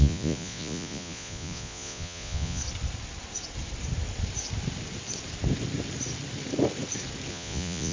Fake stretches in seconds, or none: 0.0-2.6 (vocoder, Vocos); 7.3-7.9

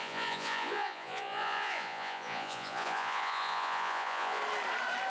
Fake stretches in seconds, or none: 0.0-4.4 (vocoder, Vocos)

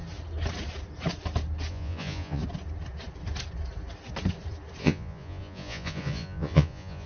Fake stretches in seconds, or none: 1.7-2.4 (vocoder, Vocos); 4.8-7.1

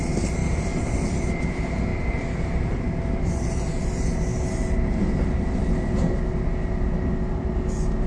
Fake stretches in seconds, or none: 0.4-1.4 (vocoder, BigVGAN v2); 1.9-3.3